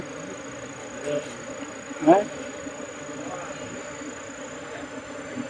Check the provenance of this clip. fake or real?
real